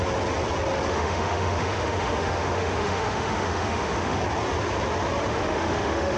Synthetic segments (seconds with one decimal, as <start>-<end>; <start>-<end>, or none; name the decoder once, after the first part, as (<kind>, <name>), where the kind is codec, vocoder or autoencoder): 0.9-4.2 (autoencoder, DAC-VAE); 5.3-6.2